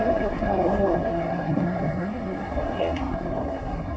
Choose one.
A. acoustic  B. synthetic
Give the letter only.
B